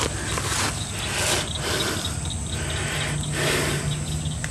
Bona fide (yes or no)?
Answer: yes